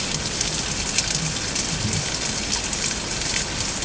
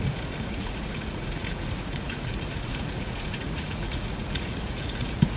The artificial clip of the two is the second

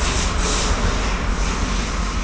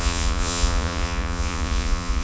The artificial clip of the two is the second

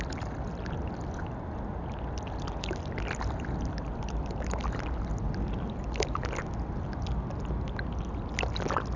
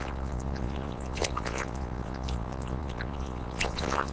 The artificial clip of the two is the second